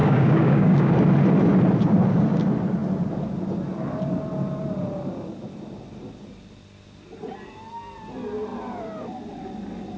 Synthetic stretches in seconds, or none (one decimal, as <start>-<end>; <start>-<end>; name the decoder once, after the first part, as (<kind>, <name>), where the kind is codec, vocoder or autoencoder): 0.0-0.9 (codec, DAC)